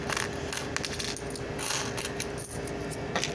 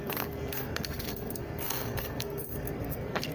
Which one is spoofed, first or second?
second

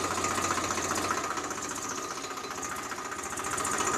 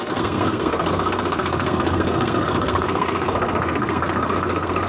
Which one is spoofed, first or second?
second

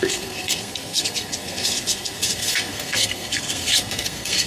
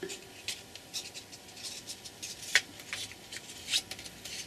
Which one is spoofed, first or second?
first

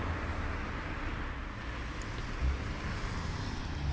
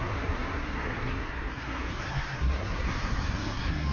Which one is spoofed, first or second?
second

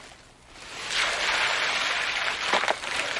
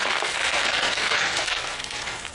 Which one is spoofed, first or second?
second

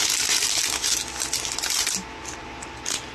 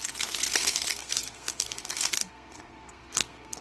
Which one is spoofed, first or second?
second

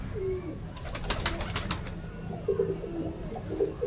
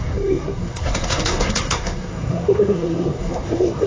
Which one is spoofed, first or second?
second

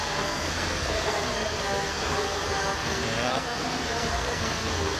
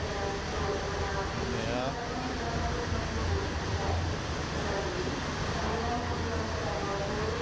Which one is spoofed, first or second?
first